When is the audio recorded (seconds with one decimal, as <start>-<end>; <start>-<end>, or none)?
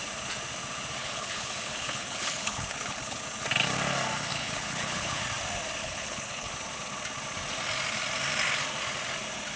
0.0-1.0; 3.2-4.3; 5.2-5.8; 6.5-9.6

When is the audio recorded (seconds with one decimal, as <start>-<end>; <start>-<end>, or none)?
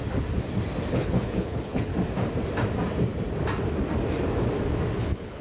0.0-0.9; 1.9-5.0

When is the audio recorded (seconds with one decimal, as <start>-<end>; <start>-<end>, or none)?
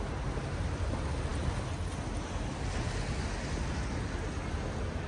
0.0-5.1